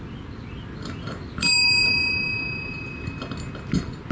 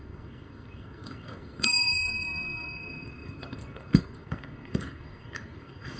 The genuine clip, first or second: first